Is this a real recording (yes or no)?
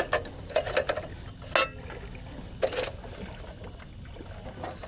yes